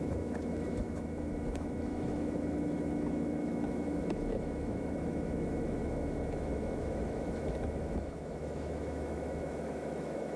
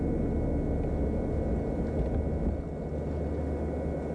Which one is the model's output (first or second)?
first